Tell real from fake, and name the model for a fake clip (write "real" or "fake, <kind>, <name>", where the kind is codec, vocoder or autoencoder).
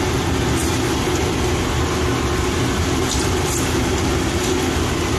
real